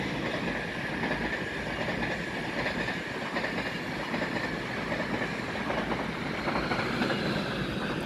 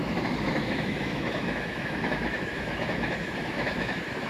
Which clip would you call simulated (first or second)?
second